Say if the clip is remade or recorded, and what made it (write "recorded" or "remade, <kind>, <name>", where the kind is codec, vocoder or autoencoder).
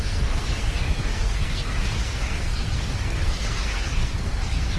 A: remade, codec, SNAC